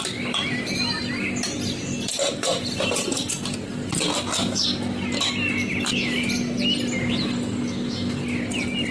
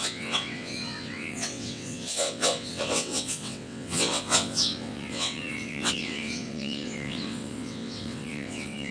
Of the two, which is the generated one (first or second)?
second